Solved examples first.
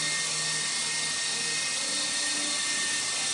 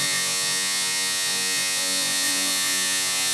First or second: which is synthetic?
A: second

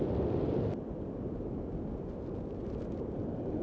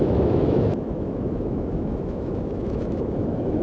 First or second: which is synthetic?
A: second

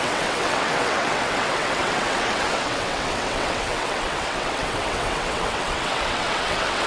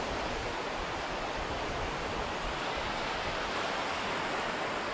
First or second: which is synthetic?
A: first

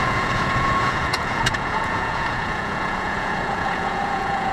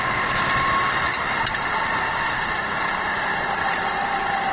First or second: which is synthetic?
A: first